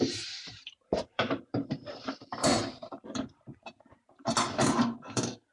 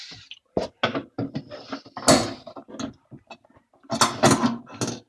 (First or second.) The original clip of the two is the second